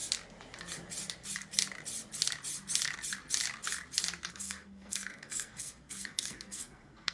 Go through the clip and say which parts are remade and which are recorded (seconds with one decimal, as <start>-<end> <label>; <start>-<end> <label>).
0.0-4.3 recorded; 4.3-7.1 remade